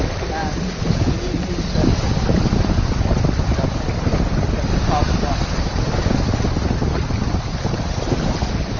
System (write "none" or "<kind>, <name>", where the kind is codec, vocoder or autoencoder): none